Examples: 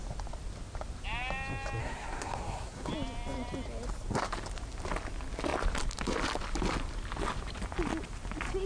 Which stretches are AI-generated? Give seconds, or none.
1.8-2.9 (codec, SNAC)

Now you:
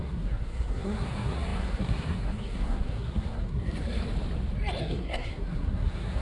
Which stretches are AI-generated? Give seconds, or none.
0.0-4.0 (codec, SNAC); 4.8-6.2

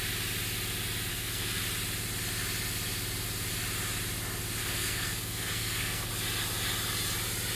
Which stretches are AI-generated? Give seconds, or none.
1.1-1.6 (codec, SNAC); 4.6-6.1

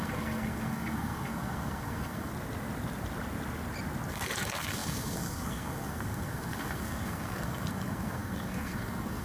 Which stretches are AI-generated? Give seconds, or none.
0.0-2.3 (codec, SNAC); 4.1-9.2

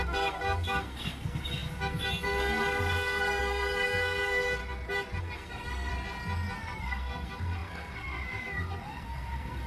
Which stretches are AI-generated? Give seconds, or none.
0.0-4.6 (codec, SNAC); 5.2-5.9; 6.6-9.7